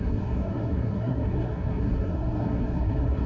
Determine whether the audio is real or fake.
fake